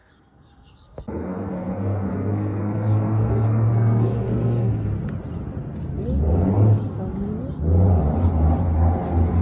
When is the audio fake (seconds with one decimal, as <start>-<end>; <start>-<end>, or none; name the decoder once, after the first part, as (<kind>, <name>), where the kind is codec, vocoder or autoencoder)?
0.0-4.9 (codec, SNAC)